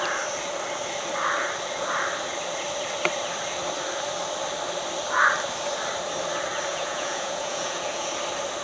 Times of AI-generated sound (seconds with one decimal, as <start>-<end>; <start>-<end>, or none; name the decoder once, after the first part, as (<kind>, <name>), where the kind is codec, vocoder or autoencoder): 6.7-8.1 (vocoder, Vocos)

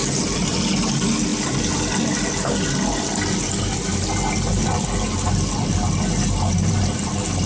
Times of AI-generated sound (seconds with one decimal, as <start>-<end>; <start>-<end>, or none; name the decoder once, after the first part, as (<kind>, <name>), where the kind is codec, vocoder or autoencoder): 0.0-0.6 (vocoder, BigVGAN v2)

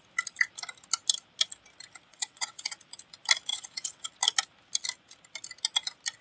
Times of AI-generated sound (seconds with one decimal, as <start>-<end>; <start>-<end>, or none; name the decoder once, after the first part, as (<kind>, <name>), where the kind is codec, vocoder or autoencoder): 2.1-2.7 (vocoder, WaveNeXt); 3.5-4.1

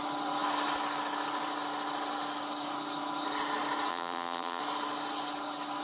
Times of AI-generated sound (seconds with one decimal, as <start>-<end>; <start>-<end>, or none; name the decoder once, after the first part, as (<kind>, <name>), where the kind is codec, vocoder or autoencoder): 3.9-4.6 (vocoder, BigVGAN v2)

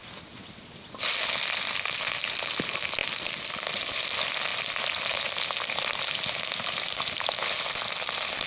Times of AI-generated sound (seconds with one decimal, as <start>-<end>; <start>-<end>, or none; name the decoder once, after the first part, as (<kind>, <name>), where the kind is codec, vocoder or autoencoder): none

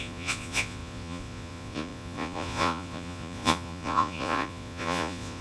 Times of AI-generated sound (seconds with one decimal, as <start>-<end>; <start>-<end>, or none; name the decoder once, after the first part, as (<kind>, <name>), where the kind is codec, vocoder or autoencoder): 0.0-5.4 (vocoder, Vocos)

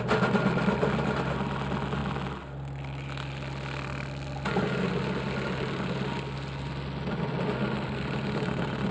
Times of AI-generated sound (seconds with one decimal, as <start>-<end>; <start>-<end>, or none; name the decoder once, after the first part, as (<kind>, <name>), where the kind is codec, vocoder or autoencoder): none